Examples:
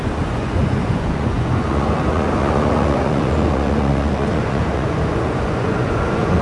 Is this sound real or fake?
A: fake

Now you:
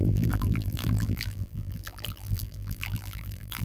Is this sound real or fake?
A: fake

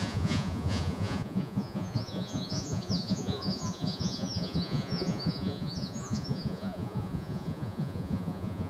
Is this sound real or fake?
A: fake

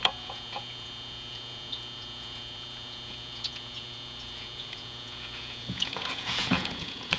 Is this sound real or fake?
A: fake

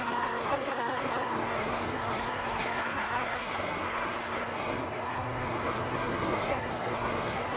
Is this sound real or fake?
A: fake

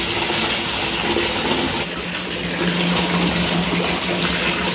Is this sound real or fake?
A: real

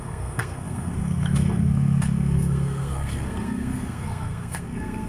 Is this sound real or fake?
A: fake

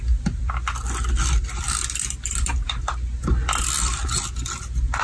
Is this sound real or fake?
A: real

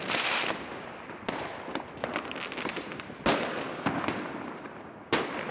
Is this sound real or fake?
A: fake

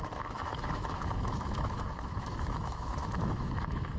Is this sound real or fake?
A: fake